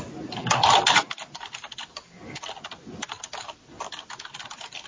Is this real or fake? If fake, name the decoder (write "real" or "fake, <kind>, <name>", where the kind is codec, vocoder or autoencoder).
real